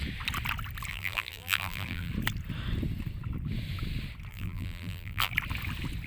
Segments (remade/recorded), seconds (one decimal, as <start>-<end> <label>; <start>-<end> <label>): 0.0-0.9 recorded; 0.9-2.1 remade; 2.1-4.3 recorded; 4.3-5.3 remade; 5.3-6.1 recorded